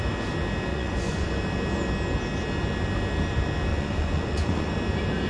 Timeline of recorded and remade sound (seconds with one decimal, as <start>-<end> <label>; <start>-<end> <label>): 0.0-0.7 recorded; 0.7-1.3 remade; 1.3-3.7 recorded; 3.7-4.7 remade; 4.7-5.3 recorded